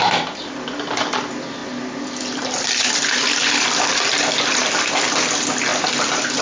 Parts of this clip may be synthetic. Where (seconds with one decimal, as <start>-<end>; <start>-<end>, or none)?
0.0-6.4